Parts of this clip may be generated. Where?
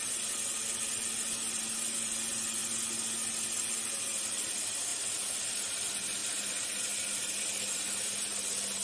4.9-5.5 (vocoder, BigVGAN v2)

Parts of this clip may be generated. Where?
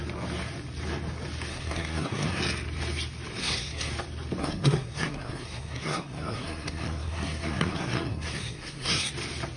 1.5-2.4 (codec, SNAC); 3.4-3.9; 4.4-9.1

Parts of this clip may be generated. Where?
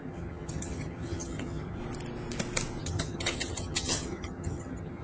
0.0-1.8 (vocoder, HiFi-GAN); 2.8-5.0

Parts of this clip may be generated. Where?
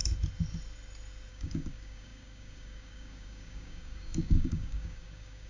1.3-5.5 (codec, DAC)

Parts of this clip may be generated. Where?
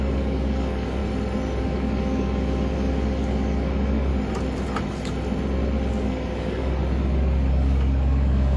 0.0-1.0 (codec, DAC); 1.6-4.1; 5.9-6.8; 7.5-8.6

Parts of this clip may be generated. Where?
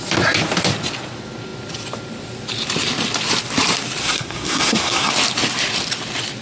4.0-5.1 (codec, SNAC)